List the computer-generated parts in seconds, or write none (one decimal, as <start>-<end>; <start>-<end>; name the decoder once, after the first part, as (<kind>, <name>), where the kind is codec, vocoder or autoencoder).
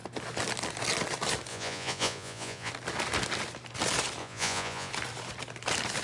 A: 1.5-2.7 (vocoder, Vocos); 4.2-4.9